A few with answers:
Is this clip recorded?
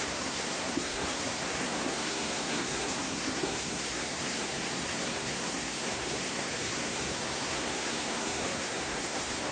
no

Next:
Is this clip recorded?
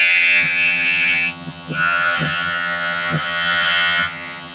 no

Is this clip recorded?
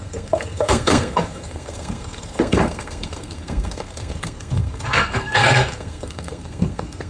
no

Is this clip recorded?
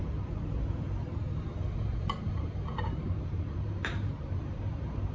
no